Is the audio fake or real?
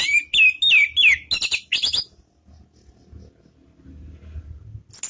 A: real